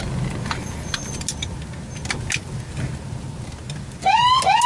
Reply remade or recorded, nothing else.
recorded